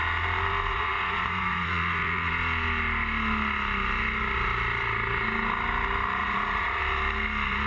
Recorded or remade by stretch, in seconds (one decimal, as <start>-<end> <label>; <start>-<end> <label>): 0.0-0.7 recorded; 0.7-2.3 remade; 2.3-6.2 recorded; 6.2-6.8 remade; 6.8-7.7 recorded

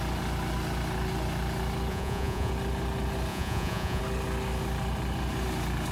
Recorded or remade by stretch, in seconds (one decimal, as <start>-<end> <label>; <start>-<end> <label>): 0.0-1.9 recorded; 1.9-2.5 remade; 2.5-3.3 recorded; 3.3-4.0 remade; 4.0-5.9 recorded

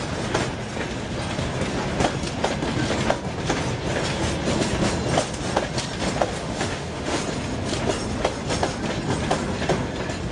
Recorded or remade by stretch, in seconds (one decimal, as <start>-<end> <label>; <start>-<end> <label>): 0.0-6.4 recorded; 6.4-7.2 remade; 7.2-10.3 recorded